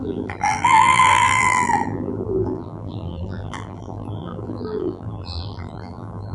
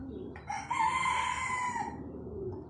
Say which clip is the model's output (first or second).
first